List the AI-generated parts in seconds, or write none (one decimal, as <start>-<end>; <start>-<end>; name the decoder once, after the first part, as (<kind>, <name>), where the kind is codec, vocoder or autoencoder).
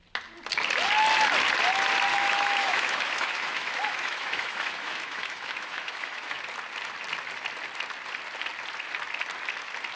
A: 2.1-6.4 (autoencoder, DAC-VAE)